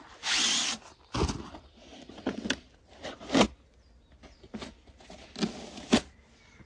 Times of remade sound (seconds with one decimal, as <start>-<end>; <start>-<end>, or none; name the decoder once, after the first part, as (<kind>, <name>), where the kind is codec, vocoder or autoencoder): 1.9-2.5 (vocoder, WaveNeXt)